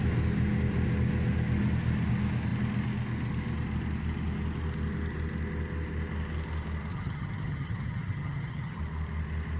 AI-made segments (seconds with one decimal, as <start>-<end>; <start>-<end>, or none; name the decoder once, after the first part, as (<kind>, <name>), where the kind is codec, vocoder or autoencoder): 6.9-8.8 (vocoder, HiFi-GAN)